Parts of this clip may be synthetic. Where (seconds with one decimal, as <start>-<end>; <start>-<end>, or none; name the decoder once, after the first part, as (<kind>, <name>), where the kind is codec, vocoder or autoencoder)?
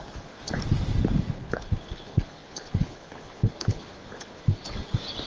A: 0.0-0.6 (codec, HILCodec); 1.3-4.4